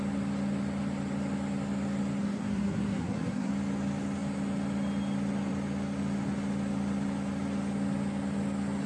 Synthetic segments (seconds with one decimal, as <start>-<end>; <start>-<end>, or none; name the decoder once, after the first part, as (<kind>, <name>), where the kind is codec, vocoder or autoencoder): 2.2-3.5 (codec, SNAC)